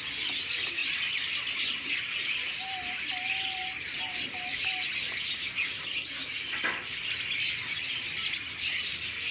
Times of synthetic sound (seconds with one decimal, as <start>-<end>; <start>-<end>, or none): none